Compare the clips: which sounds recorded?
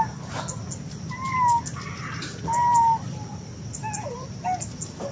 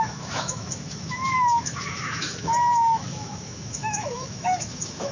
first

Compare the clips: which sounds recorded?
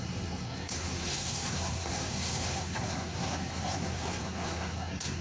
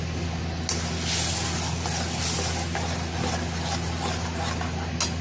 second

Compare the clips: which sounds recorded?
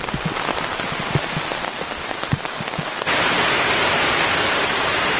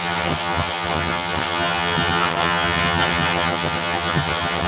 first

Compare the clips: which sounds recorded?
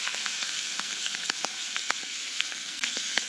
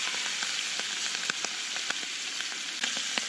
second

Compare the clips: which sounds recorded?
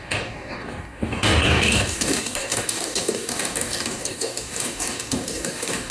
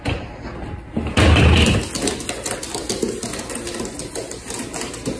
second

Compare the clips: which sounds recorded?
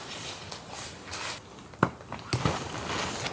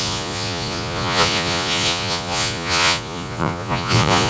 first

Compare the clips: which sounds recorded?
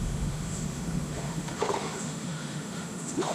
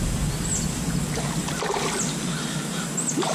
second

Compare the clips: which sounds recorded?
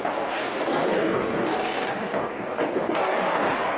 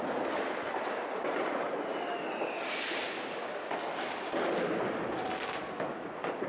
second